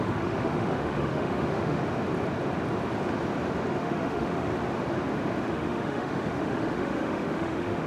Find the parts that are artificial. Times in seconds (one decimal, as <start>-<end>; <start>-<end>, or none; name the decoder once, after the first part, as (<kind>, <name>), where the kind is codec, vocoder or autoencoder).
0.0-1.8 (autoencoder, DAC-VAE); 3.8-4.5; 5.5-7.9